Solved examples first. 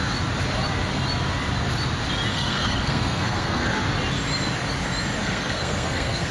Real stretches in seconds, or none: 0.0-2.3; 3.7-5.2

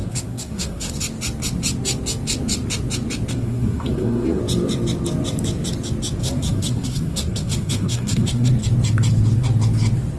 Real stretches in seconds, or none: 0.9-3.3; 4.4-6.2; 8.5-10.2

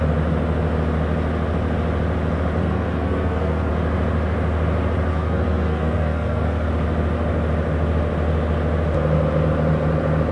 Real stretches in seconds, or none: 0.0-2.6; 3.7-5.1; 6.7-10.3

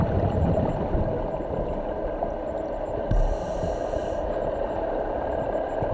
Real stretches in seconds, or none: 0.0-5.9